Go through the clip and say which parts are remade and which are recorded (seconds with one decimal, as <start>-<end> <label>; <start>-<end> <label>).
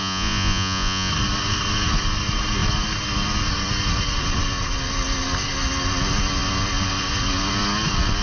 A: 0.0-1.1 remade; 1.1-8.2 recorded